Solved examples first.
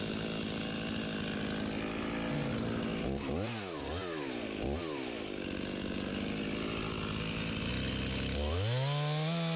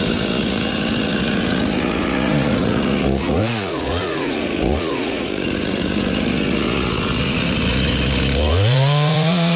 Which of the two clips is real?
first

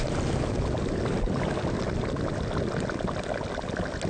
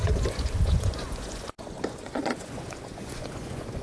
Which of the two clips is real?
first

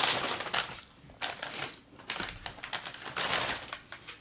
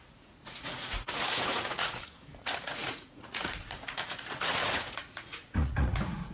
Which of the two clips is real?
first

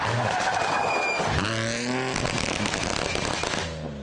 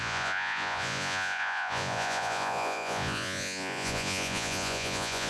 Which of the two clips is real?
first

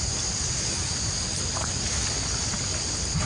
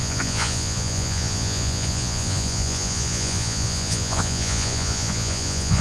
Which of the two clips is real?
first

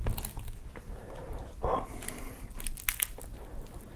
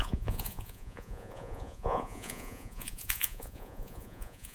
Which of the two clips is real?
first